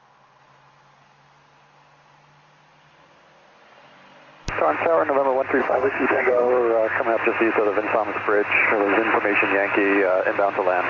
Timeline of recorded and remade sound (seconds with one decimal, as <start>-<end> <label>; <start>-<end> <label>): 0.0-5.6 recorded; 5.6-6.5 remade; 6.5-10.9 recorded